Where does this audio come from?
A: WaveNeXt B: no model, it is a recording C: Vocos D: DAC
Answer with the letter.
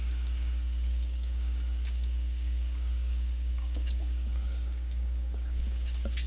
D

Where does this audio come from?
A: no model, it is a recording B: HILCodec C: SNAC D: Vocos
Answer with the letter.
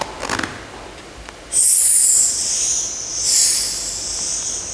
A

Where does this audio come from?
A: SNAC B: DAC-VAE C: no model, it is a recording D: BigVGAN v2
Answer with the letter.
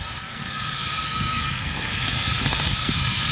A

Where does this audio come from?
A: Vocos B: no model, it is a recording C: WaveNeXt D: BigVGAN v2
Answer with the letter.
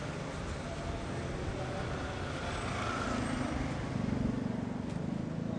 B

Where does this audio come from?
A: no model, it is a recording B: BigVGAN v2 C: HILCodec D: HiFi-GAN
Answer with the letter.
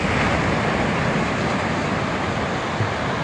A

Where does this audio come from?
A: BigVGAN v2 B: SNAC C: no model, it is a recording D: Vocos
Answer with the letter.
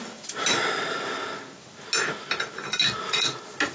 C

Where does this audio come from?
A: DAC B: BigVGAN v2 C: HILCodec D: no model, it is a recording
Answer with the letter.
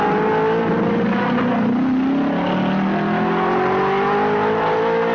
D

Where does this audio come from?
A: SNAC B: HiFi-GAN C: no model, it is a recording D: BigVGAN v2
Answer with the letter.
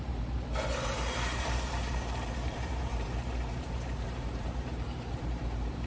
D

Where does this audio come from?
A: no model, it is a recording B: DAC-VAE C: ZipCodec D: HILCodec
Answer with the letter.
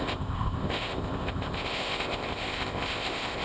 C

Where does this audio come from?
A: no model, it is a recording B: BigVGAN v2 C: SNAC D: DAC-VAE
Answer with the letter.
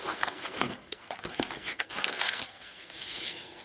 C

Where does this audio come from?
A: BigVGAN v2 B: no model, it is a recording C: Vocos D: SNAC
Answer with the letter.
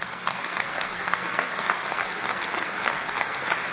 D